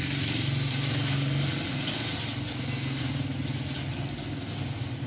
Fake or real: real